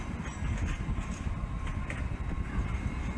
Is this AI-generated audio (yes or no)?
no